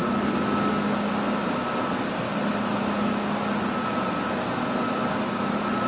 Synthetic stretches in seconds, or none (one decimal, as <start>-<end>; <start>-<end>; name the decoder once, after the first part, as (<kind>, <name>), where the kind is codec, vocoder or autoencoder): none